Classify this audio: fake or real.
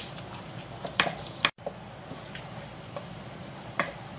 fake